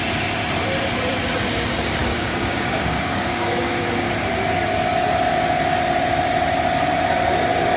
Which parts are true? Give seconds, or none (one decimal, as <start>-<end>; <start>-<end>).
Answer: 0.0-2.0; 4.1-7.8